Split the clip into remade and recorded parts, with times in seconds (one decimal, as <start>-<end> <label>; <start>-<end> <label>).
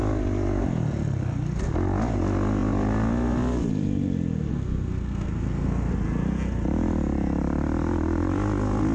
0.0-4.5 recorded; 4.5-5.9 remade; 5.9-8.9 recorded